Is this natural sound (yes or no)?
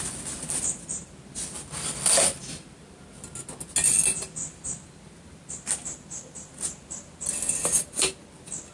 yes